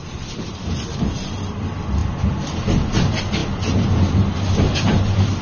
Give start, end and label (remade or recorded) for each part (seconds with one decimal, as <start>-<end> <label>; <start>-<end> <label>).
0.0-5.4 recorded